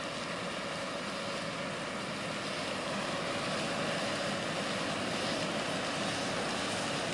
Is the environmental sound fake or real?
real